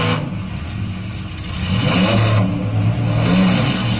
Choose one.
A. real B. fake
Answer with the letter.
A